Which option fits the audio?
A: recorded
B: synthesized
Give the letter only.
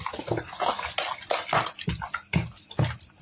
A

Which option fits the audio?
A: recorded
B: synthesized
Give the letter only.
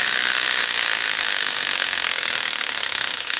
B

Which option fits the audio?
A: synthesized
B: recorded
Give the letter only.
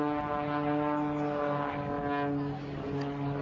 B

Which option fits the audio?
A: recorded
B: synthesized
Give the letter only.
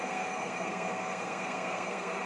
B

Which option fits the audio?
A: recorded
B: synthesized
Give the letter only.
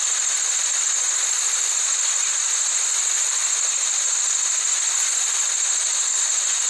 A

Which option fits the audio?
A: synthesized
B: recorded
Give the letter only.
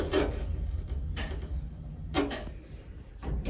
B